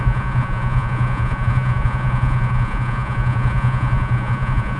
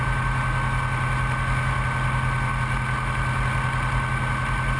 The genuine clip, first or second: second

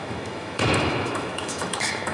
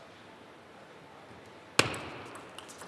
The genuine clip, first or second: second